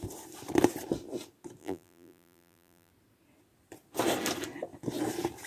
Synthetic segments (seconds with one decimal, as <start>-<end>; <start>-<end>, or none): 1.6-2.9

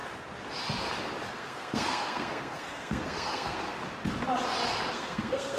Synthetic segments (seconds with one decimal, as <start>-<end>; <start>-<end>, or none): 1.3-3.8; 4.9-5.6